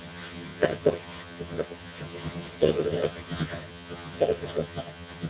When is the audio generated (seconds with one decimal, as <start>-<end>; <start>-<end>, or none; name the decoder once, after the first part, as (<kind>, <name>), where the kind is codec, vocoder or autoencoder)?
0.0-5.3 (vocoder, HiFi-GAN)